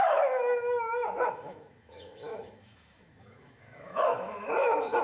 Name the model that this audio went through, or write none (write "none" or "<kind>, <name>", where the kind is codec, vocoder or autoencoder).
autoencoder, DAC-VAE